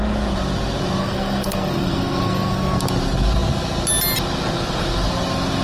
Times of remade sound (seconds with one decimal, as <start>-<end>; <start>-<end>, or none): 1.0-2.8